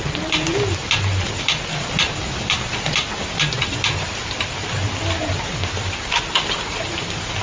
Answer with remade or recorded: recorded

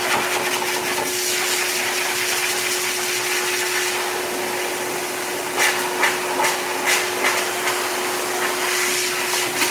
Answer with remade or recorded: recorded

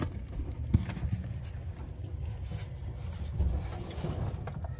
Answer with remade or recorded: recorded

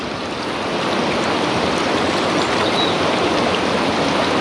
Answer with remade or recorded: remade